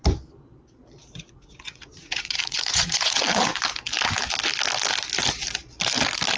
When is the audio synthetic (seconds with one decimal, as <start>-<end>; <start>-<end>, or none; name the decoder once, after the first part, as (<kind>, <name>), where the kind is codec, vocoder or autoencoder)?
1.1-3.2 (vocoder, Vocos)